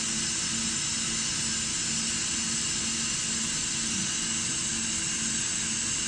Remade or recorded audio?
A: recorded